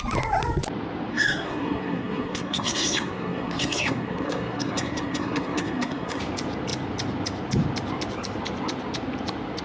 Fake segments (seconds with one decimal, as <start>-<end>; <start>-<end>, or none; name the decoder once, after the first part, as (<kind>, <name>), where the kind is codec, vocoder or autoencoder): 1.1-6.2 (codec, SNAC)